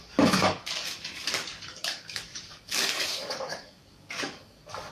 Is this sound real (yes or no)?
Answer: no